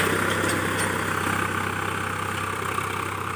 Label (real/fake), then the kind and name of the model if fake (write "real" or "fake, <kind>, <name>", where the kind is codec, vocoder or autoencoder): real